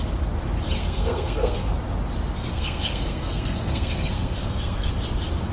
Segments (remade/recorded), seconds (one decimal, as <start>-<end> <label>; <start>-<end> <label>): 0.0-0.8 recorded; 0.8-1.7 remade; 1.7-2.5 recorded; 2.5-4.9 remade; 4.9-5.5 recorded

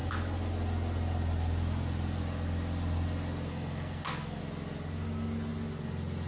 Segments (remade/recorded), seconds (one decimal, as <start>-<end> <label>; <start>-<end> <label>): 0.0-3.5 recorded; 3.5-4.4 remade; 4.4-6.3 recorded

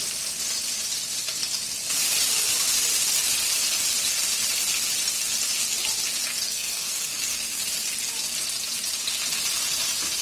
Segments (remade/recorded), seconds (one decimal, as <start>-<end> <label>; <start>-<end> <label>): 0.0-6.3 recorded; 6.3-7.6 remade; 7.6-10.2 recorded

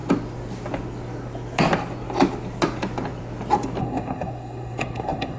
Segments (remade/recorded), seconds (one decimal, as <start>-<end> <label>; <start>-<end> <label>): 0.0-3.8 recorded; 3.8-5.4 remade

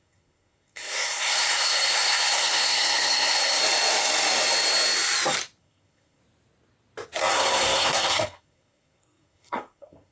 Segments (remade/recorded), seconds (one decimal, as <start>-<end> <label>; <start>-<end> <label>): 0.0-3.6 remade; 3.6-5.6 recorded; 5.6-6.2 remade; 6.2-7.3 recorded; 7.3-10.1 remade